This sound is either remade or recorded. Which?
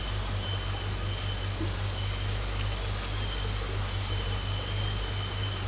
recorded